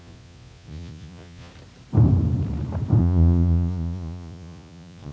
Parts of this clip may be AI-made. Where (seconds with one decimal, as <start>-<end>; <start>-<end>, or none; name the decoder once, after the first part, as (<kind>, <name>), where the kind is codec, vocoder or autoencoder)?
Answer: 0.0-1.5 (vocoder, Vocos); 3.0-5.1